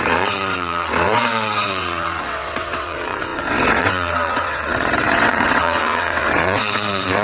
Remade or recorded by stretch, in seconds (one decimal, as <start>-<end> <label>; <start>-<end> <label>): 0.0-7.2 remade